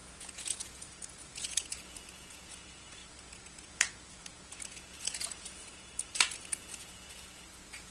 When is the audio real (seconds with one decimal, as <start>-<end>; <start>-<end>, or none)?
none